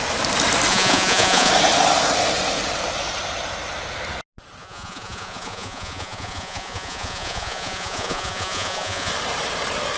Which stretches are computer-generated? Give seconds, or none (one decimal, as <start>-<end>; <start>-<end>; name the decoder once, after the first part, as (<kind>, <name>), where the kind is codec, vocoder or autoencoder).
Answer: 0.7-1.5 (vocoder, Vocos); 4.6-9.1